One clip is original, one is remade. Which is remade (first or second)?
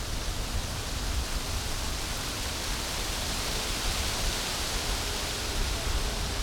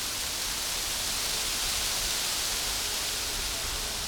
first